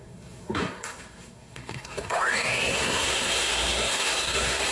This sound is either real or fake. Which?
fake